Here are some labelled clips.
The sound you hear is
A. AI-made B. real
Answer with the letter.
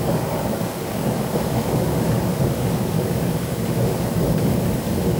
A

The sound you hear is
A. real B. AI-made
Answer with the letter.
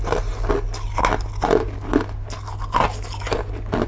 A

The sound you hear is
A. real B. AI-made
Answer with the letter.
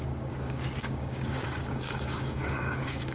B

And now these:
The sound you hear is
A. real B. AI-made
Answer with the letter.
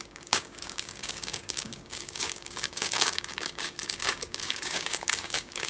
B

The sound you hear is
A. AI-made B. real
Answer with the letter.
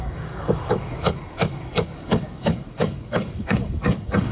A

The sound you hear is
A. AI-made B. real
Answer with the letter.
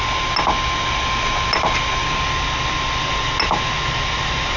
B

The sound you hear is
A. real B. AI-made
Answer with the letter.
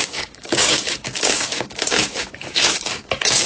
B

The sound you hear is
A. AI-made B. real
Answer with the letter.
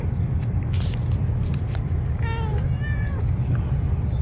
B